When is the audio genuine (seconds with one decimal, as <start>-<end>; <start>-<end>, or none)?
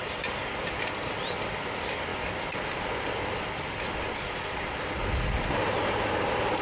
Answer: 0.0-6.6